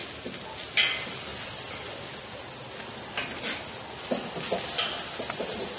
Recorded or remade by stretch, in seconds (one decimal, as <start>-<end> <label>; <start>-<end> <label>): 0.0-5.8 recorded